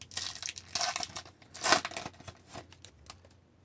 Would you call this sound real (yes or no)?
yes